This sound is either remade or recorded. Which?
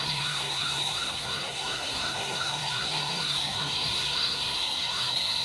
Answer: remade